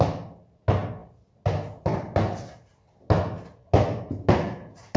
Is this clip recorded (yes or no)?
yes